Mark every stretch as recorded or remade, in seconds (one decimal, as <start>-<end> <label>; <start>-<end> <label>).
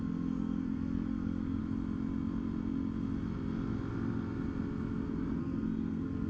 0.0-1.6 remade; 1.6-5.4 recorded; 5.4-6.3 remade